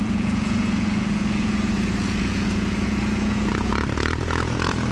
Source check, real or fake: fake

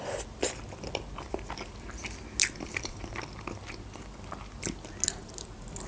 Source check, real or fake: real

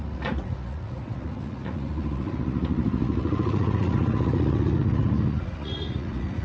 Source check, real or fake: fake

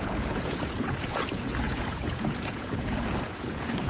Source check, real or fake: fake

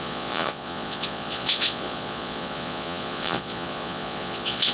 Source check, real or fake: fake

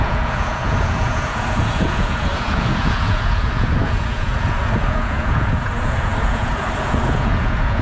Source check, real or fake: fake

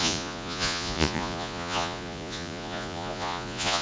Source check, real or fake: fake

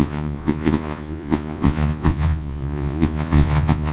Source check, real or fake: fake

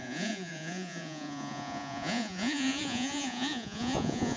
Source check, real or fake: fake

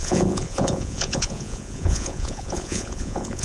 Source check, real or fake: fake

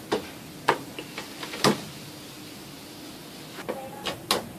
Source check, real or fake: real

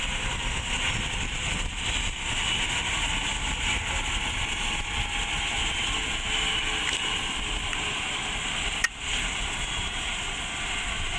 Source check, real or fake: real